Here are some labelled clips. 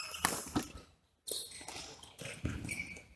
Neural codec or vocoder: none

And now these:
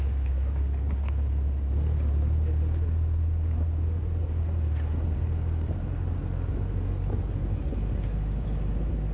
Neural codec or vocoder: none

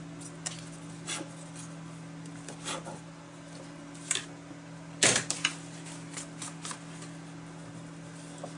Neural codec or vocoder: none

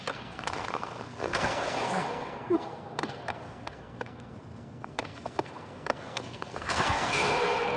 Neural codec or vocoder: codec, SNAC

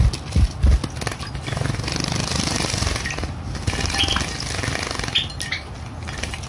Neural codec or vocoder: none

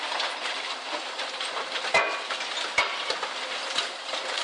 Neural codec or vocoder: none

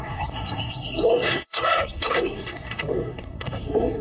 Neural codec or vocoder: codec, SNAC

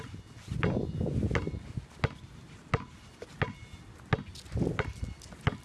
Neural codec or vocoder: none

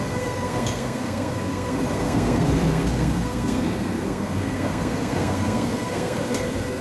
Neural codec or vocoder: codec, SNAC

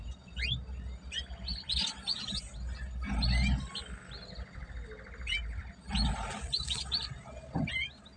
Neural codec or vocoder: none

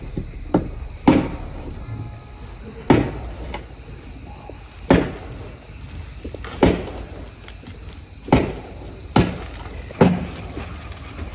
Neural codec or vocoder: none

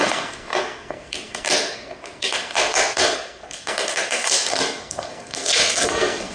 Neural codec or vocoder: codec, SNAC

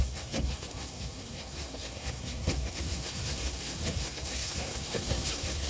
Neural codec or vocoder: codec, SNAC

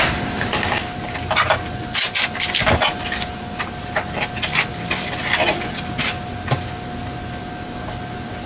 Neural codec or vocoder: none